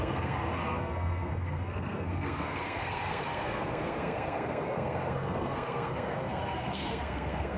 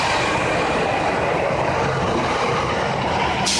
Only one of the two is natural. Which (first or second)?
second